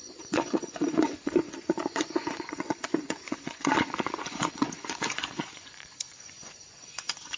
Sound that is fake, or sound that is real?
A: fake